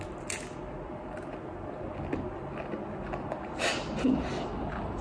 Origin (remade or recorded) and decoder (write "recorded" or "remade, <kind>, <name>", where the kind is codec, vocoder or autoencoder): recorded